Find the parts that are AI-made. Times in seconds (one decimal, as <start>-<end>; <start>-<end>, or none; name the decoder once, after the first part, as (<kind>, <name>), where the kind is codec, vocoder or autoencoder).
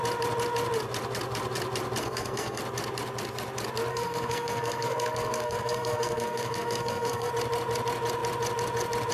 2.0-2.6 (codec, SNAC); 3.9-7.3